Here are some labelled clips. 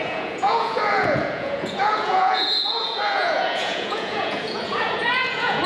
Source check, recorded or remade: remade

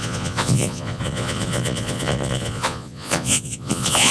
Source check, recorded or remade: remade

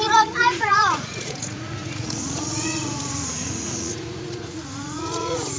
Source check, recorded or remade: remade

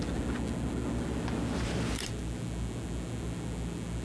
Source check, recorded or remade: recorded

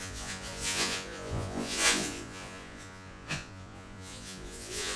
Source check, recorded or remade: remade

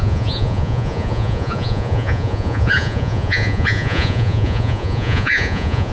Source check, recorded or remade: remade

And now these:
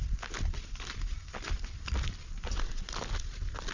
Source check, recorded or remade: recorded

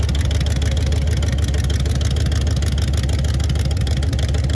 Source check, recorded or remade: recorded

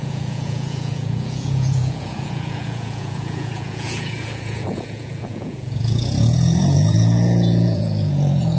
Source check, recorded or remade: remade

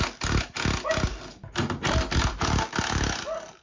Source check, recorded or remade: recorded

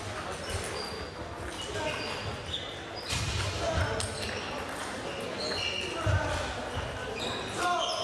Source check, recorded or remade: recorded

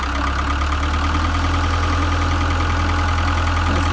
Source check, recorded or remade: recorded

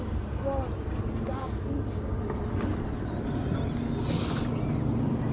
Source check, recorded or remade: recorded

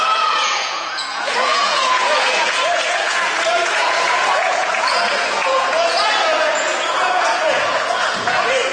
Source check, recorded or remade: remade